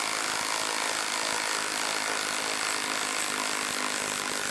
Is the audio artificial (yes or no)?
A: no